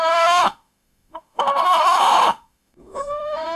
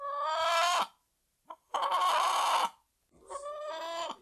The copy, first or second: first